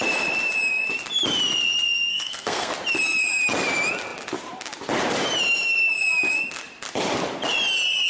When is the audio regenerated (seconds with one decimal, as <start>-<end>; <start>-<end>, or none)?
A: 2.1-2.7